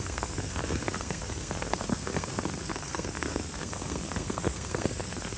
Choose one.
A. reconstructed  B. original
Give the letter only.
A